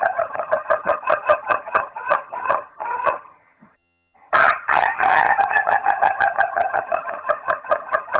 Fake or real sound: fake